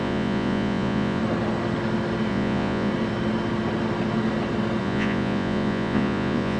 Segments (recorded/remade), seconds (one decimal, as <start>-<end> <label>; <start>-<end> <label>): 0.0-1.2 remade; 1.2-2.3 recorded; 2.3-2.9 remade; 2.9-4.8 recorded; 4.8-6.6 remade